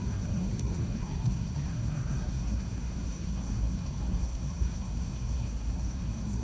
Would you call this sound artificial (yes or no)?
yes